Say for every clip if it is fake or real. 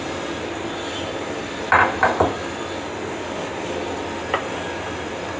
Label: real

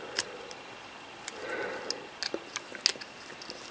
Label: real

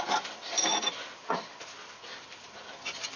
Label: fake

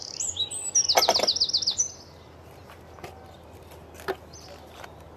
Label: real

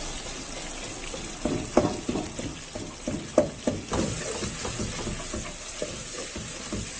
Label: real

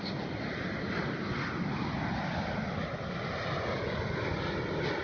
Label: real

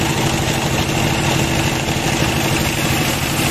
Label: real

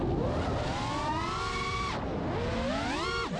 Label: real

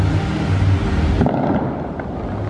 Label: real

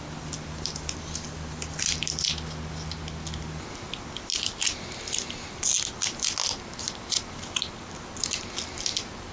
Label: real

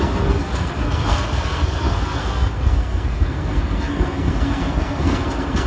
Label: fake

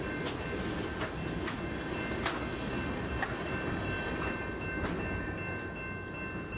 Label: real